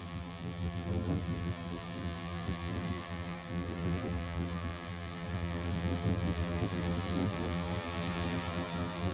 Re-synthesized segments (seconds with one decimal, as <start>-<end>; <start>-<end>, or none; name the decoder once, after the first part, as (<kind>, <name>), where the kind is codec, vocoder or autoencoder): 0.0-9.1 (vocoder, BigVGAN v2)